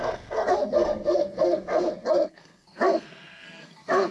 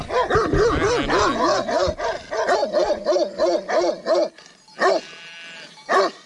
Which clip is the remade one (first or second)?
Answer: first